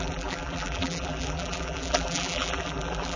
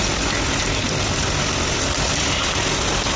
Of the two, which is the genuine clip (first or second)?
second